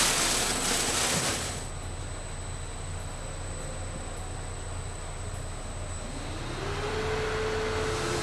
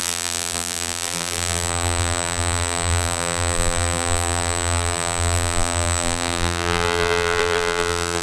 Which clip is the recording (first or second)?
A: first